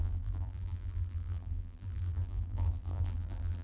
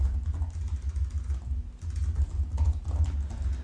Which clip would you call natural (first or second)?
second